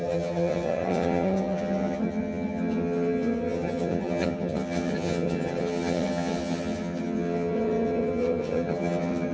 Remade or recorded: remade